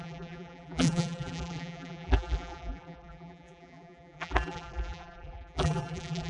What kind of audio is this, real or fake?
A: fake